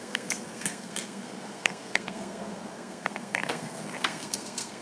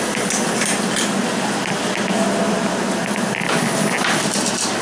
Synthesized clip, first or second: first